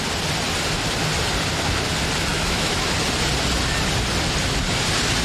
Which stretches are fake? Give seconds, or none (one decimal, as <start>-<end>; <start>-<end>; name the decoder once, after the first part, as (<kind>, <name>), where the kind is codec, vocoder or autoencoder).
2.3-2.8 (autoencoder, DAC-VAE)

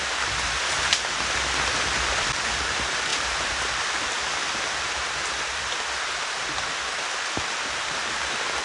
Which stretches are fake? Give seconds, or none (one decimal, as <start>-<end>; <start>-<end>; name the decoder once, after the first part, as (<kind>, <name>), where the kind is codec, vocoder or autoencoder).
3.1-4.0 (vocoder, BigVGAN v2)